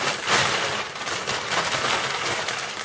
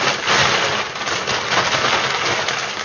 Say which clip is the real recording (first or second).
second